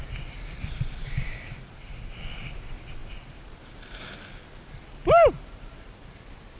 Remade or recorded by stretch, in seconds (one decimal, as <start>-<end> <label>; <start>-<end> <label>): 0.0-6.6 recorded